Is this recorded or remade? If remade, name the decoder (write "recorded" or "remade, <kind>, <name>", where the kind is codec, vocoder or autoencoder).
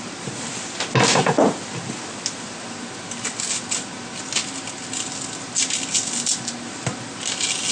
recorded